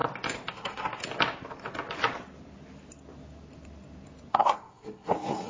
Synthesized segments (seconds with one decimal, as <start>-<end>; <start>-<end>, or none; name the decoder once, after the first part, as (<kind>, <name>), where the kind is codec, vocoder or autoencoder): 0.5-1.0 (codec, SNAC); 4.3-5.5